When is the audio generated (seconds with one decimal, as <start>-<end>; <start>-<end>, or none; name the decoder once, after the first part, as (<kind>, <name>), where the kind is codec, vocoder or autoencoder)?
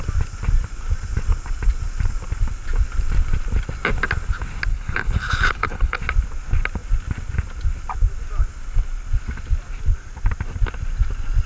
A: 4.7-6.0 (codec, HILCodec)